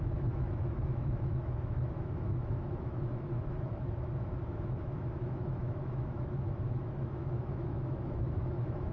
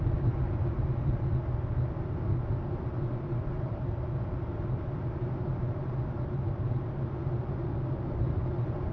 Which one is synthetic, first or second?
first